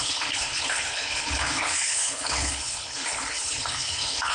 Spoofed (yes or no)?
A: yes